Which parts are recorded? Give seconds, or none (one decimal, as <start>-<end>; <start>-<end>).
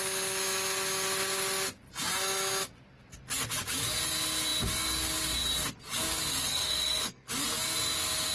0.0-6.3; 7.3-8.3